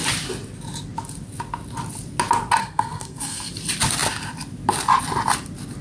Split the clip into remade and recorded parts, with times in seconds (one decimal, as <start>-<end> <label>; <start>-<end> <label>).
0.0-2.6 recorded; 2.6-3.5 remade; 3.5-5.8 recorded